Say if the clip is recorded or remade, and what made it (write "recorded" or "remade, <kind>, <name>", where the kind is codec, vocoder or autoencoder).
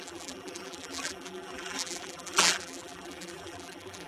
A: remade, vocoder, BigVGAN v2